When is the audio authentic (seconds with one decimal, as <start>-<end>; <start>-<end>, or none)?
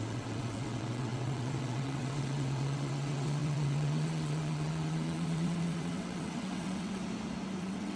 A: 7.0-7.6